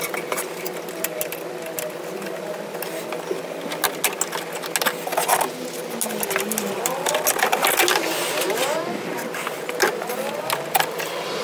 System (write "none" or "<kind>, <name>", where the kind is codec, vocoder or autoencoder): none